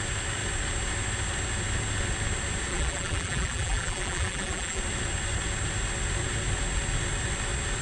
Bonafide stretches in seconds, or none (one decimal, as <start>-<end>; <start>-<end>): 0.0-2.7; 4.8-7.8